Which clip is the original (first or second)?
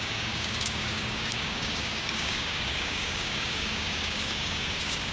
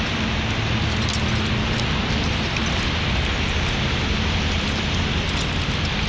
second